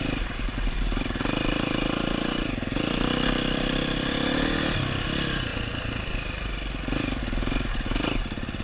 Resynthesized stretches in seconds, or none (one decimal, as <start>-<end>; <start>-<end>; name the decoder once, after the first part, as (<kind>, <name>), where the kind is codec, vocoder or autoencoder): none